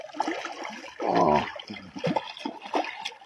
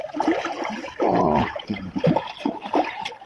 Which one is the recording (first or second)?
first